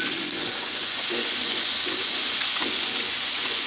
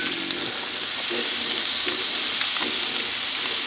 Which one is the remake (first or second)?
first